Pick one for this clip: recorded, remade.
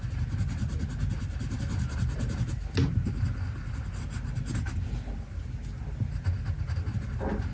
recorded